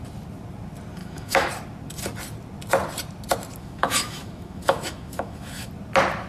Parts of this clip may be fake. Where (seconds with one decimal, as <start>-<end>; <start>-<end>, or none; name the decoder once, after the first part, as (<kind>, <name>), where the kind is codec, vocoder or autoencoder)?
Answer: 1.0-1.5 (autoencoder, DAC-VAE); 3.6-5.7